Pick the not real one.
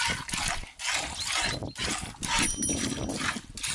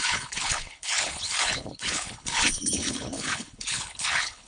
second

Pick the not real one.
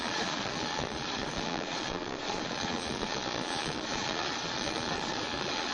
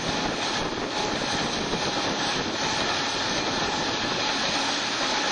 first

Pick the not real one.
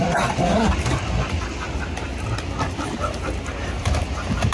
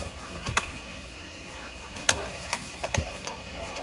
second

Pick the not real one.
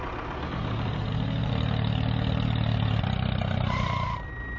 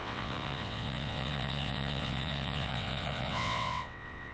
second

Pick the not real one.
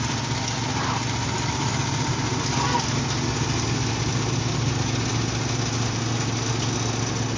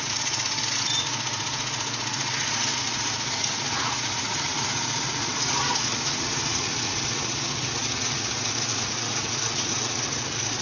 second